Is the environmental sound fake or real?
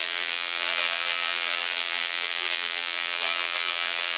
fake